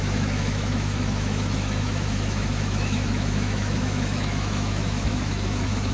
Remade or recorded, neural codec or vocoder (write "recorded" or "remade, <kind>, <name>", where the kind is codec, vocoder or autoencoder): remade, autoencoder, DAC-VAE